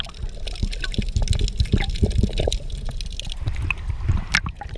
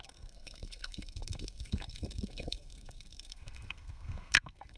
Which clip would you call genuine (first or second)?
first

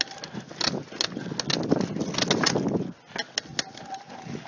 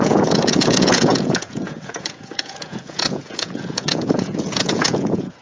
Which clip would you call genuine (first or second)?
first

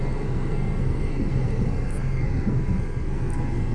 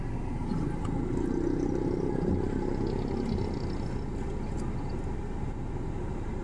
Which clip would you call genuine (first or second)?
second